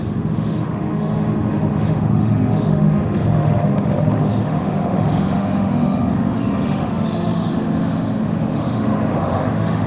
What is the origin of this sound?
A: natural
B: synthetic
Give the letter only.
B